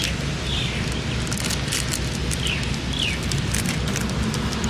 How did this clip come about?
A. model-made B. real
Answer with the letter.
B